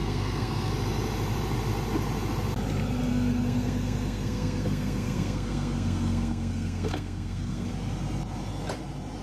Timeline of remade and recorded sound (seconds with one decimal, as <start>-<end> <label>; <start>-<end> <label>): 0.0-0.7 remade; 0.7-3.1 recorded; 3.1-7.7 remade; 7.7-9.2 recorded